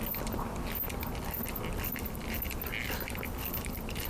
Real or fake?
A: real